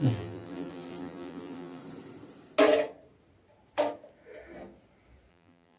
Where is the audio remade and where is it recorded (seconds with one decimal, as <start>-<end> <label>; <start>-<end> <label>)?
0.0-1.8 remade; 1.8-5.3 recorded; 5.3-5.8 remade